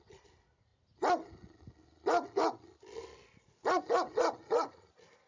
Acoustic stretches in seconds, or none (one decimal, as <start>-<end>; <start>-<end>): 0.0-5.3